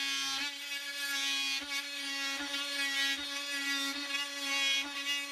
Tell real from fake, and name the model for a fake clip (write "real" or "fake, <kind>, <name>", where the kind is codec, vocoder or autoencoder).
real